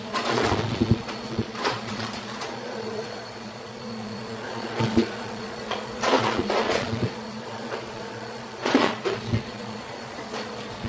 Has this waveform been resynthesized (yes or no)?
yes